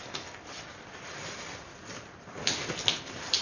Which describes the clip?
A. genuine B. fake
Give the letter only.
A